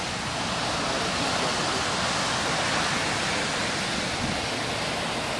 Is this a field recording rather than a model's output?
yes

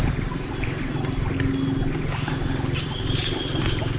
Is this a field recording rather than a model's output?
yes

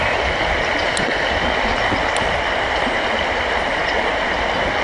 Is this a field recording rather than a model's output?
yes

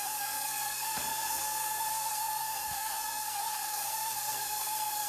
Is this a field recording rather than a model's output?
no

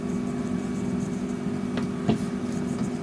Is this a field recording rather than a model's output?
yes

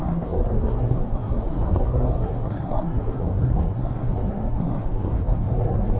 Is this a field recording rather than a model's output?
no